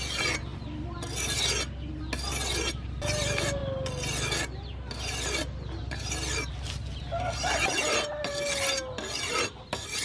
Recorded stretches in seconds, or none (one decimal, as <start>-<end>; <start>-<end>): 0.0-10.0